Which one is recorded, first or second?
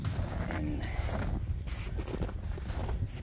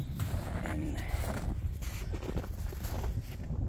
first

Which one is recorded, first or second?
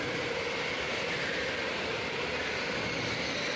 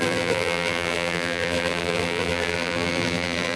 first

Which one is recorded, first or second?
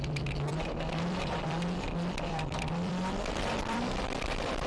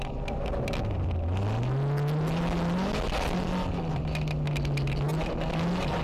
second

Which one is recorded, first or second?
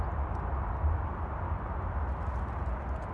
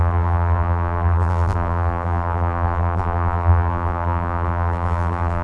first